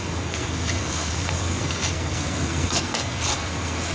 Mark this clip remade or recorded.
remade